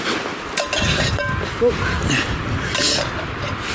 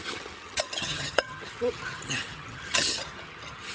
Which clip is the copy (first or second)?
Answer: second